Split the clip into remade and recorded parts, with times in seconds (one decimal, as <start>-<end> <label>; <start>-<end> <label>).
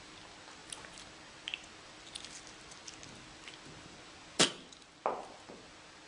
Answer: 0.0-6.1 recorded